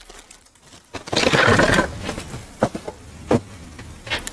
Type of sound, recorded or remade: recorded